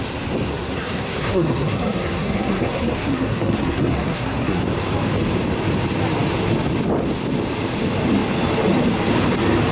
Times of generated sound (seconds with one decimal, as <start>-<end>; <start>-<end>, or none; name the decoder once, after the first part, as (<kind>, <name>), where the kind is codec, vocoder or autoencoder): 0.5-4.6 (codec, SNAC)